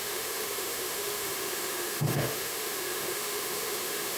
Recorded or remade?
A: remade